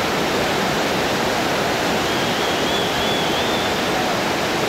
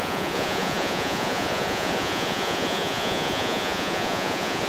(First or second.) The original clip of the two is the first